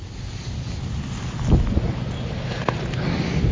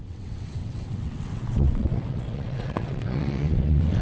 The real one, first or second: first